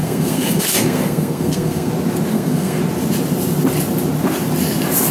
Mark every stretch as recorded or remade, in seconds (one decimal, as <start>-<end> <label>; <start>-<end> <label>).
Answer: 0.0-1.9 remade; 1.9-2.3 recorded; 2.3-2.8 remade; 2.8-5.1 recorded